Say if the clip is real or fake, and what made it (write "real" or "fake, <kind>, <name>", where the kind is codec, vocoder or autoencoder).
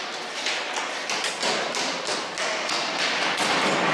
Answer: real